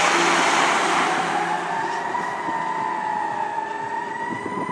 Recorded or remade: recorded